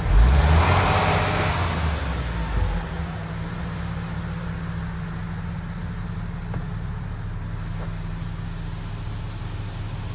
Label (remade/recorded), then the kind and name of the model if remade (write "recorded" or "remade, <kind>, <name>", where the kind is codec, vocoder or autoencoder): recorded